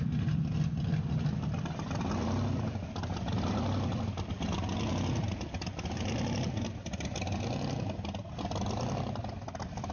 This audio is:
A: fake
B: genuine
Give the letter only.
B